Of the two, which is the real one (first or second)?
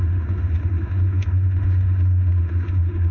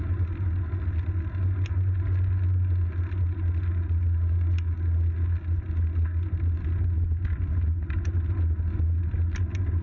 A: second